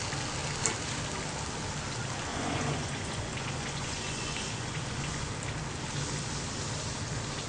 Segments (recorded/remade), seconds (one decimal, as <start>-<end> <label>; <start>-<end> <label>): 0.0-2.3 recorded; 2.3-5.3 remade; 5.3-7.5 recorded